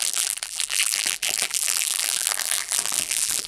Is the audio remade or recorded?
remade